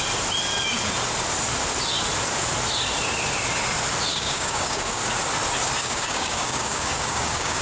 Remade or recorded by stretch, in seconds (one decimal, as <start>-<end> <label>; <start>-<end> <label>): 0.0-4.1 recorded; 4.1-5.0 remade; 5.0-5.8 recorded; 5.8-7.6 remade